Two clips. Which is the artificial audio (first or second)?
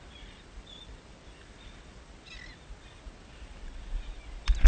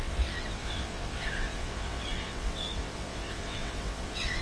second